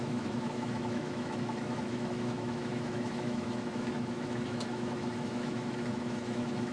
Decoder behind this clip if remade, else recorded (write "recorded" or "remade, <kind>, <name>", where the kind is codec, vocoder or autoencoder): remade, autoencoder, DAC-VAE